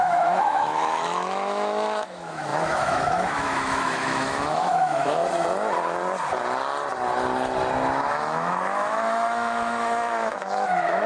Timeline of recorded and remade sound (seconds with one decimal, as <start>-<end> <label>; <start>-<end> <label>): 0.0-5.2 remade; 5.2-8.1 recorded; 8.1-11.1 remade